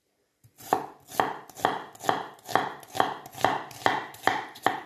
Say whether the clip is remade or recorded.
recorded